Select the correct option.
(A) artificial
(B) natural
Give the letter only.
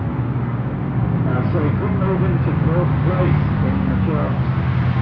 B